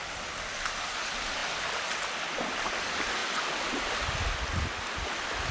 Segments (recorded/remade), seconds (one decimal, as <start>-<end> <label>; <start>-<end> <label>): 0.0-5.5 recorded